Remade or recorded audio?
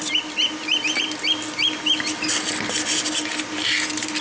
recorded